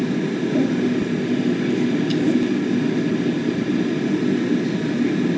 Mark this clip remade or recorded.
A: recorded